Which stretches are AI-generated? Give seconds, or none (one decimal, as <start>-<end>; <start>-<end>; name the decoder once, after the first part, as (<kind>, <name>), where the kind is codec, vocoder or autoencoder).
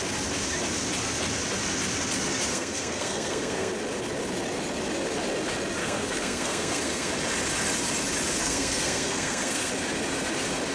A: 2.5-3.7 (codec, SNAC); 5.8-7.1; 8.4-9.7